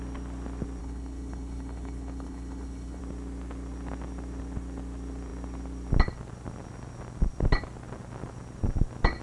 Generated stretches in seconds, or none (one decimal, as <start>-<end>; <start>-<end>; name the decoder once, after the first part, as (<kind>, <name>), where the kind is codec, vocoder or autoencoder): 0.8-3.0 (codec, HILCodec)